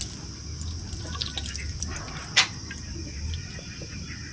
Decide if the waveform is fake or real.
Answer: real